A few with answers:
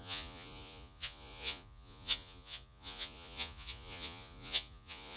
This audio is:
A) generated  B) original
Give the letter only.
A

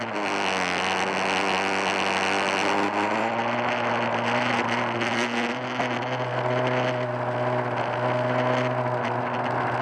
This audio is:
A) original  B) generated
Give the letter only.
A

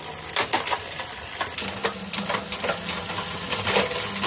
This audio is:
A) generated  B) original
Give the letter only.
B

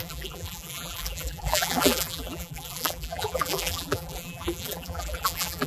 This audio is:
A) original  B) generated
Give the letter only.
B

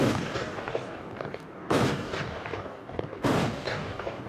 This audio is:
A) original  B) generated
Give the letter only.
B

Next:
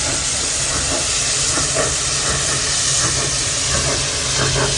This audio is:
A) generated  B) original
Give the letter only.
B